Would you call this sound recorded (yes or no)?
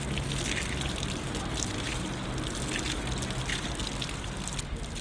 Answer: yes